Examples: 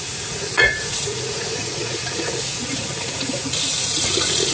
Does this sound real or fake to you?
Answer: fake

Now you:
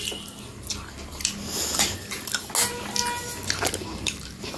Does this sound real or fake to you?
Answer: real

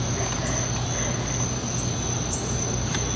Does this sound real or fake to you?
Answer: real